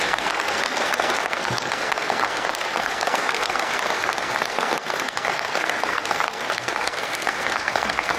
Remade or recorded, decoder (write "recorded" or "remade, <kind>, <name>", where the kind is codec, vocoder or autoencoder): remade, codec, SNAC